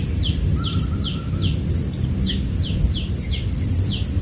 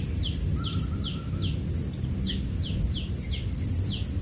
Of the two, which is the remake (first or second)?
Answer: first